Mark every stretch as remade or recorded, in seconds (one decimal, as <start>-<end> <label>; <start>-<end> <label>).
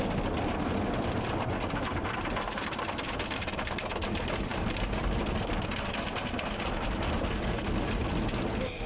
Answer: 0.0-8.9 recorded